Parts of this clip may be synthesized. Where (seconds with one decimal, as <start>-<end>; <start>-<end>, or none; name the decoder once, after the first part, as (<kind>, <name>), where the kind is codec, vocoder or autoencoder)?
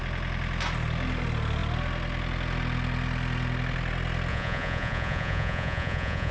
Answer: 4.3-6.3 (vocoder, Vocos)